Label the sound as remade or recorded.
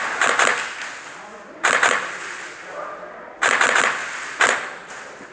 recorded